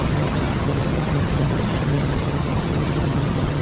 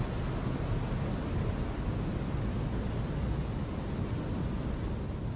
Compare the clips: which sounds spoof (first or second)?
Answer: first